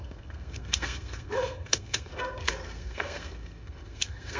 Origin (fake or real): fake